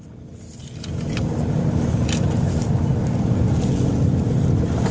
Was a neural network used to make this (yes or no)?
no